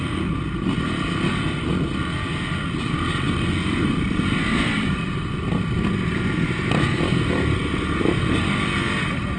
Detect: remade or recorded recorded